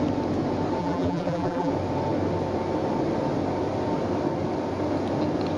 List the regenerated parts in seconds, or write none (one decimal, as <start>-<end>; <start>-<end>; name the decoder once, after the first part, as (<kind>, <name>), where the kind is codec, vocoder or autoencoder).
0.8-1.7 (vocoder, BigVGAN v2)